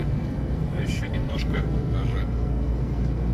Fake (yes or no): yes